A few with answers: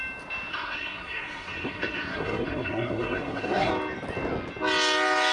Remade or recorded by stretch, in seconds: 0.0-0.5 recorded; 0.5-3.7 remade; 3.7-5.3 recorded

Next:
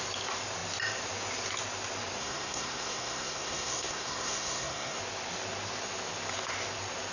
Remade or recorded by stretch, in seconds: 0.0-2.2 recorded; 2.2-5.0 remade; 5.0-7.1 recorded

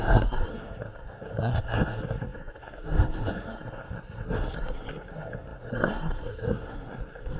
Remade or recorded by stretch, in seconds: 0.0-7.4 remade

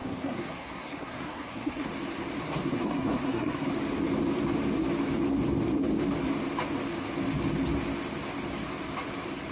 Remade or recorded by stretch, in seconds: 0.0-1.9 remade; 1.9-2.4 recorded; 2.4-3.7 remade; 3.7-9.5 recorded

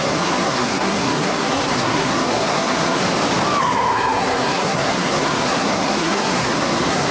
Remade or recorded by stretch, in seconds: 0.0-3.0 remade; 3.0-3.6 recorded; 3.6-7.1 remade

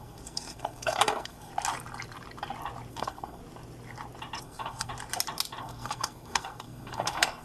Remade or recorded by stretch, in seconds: 0.0-1.5 remade; 1.5-2.9 recorded; 2.9-3.4 remade; 3.4-4.4 recorded; 4.4-4.9 remade; 4.9-5.6 recorded; 5.6-7.4 remade

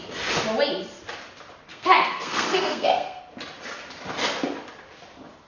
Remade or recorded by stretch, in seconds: 0.0-1.7 recorded; 1.7-3.2 remade; 3.2-5.5 recorded